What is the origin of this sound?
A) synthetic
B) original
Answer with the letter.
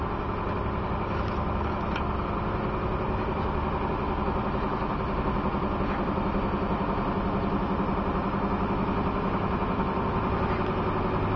B